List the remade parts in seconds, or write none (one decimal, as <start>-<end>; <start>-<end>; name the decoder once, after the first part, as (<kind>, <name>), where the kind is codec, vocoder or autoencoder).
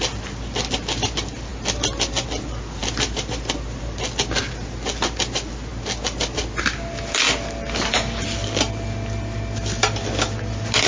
none